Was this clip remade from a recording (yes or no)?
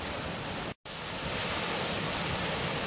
no